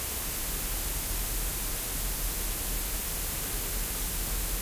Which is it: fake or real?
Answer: real